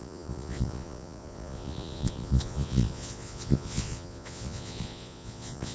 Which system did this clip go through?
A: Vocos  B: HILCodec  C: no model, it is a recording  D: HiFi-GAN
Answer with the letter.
A